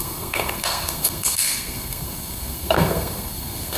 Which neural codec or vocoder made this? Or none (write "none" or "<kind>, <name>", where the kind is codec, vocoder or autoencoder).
codec, SNAC